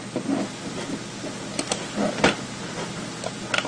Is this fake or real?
real